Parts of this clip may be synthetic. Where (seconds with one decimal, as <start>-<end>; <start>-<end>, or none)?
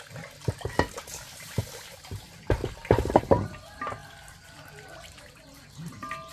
2.6-3.2; 4.0-6.3